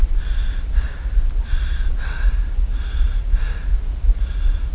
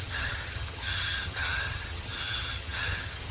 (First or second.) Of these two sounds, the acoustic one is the first